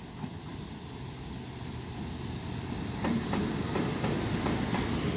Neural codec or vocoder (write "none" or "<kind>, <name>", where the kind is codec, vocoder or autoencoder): none